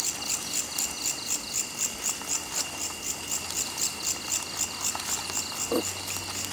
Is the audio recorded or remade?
recorded